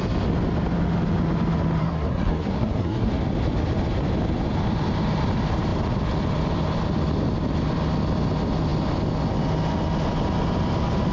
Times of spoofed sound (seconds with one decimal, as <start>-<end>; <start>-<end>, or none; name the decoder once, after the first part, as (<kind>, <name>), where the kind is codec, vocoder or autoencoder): 1.8-3.1 (codec, SNAC)

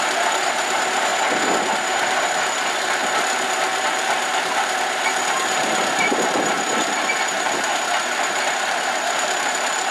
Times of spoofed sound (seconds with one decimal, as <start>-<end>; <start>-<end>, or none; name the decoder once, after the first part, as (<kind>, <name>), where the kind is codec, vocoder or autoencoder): 0.0-1.1 (vocoder, BigVGAN v2); 1.7-9.9

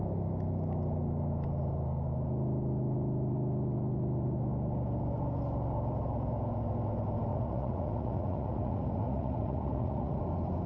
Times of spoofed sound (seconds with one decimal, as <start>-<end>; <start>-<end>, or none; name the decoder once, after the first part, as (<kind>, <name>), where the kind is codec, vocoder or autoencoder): 7.3-10.2 (vocoder, Vocos)

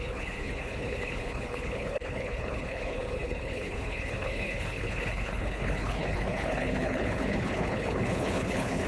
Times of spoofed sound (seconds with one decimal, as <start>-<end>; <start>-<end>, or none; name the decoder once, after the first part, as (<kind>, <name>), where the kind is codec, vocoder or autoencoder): 0.0-8.9 (codec, HILCodec)

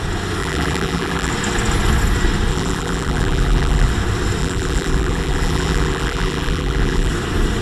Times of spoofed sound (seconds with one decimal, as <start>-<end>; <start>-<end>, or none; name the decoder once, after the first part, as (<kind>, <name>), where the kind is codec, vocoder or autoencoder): 0.4-1.3 (vocoder, BigVGAN v2); 2.5-3.9; 4.4-7.1